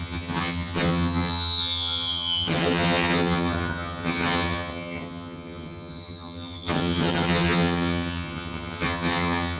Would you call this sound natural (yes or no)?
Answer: no